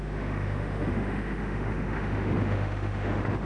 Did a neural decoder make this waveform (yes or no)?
yes